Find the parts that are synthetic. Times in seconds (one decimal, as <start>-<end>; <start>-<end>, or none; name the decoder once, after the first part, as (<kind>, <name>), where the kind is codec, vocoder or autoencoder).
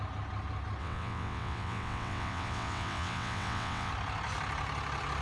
0.8-3.9 (vocoder, WaveNeXt)